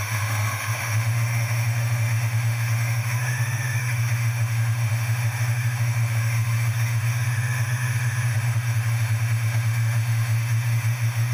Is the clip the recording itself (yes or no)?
no